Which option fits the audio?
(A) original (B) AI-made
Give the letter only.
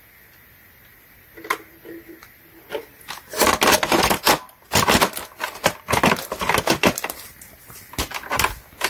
A